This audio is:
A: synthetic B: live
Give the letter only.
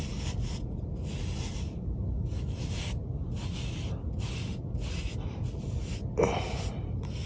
B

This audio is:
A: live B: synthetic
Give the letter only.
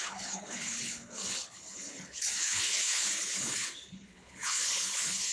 B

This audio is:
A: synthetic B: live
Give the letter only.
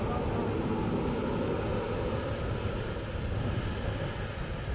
B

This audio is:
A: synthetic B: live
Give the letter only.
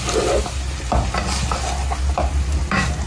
B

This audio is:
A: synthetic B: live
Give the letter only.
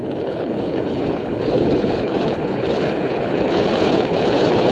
A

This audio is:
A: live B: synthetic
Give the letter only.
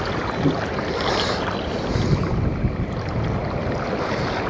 A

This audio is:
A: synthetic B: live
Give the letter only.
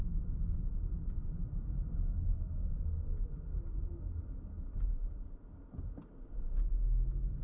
B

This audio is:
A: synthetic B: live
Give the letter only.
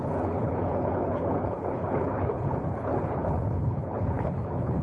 A